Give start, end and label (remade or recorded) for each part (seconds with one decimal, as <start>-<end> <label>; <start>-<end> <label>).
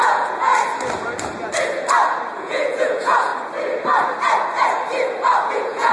0.0-0.5 remade; 0.5-2.4 recorded; 2.4-3.3 remade; 3.3-5.5 recorded; 5.5-5.9 remade